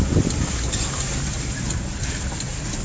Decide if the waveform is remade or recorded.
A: recorded